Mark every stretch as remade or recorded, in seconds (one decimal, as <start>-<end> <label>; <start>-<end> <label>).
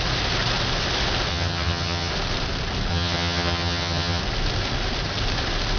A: 0.0-1.3 recorded; 1.3-2.1 remade; 2.1-2.9 recorded; 2.9-4.2 remade; 4.2-5.8 recorded